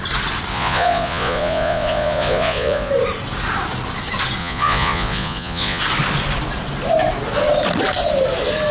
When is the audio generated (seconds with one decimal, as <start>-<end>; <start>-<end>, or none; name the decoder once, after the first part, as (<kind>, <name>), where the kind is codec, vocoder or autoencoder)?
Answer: 0.5-2.9 (vocoder, Vocos); 4.4-5.8